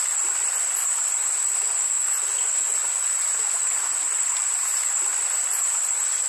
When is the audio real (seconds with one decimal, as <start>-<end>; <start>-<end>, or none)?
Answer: 0.0-6.3